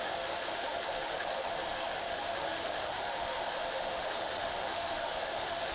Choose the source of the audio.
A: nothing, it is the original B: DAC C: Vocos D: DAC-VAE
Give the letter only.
D